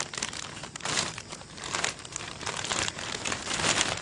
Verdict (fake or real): fake